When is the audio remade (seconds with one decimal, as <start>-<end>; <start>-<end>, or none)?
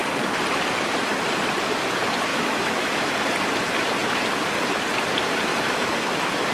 2.3-3.1; 5.5-6.5